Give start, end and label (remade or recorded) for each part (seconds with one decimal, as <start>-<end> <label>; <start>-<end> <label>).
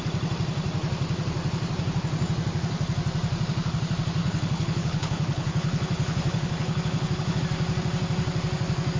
0.0-4.2 recorded; 4.2-7.4 remade; 7.4-9.0 recorded